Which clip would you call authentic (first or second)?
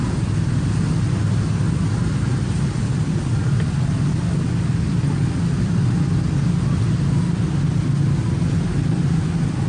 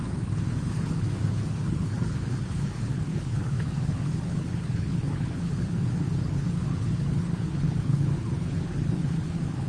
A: first